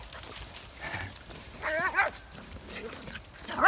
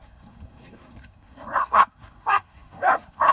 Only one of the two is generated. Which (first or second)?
second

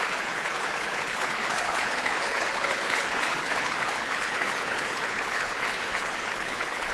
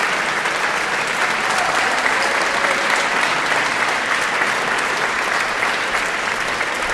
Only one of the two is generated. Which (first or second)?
first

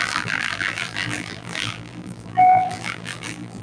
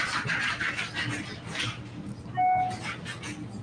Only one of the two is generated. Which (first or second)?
first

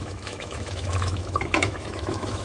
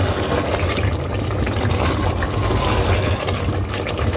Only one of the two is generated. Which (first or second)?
first